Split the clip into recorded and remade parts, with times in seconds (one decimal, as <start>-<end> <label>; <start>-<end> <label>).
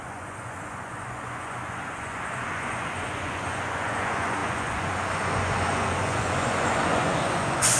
0.0-7.8 remade